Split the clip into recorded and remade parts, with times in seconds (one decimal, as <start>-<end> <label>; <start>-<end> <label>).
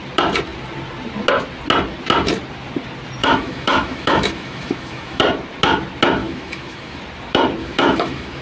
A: 0.0-3.2 recorded; 3.2-5.2 remade; 5.2-6.2 recorded; 6.2-7.0 remade; 7.0-7.6 recorded; 7.6-8.4 remade